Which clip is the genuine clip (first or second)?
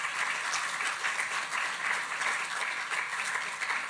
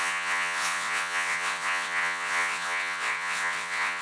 first